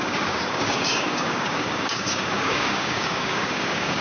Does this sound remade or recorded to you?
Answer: remade